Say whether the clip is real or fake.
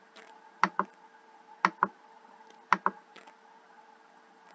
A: real